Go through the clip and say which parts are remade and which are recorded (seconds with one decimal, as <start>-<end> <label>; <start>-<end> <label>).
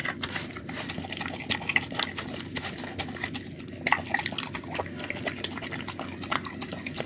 0.0-7.1 recorded